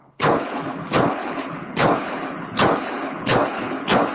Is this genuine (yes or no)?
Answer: no